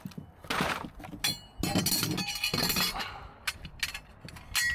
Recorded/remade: recorded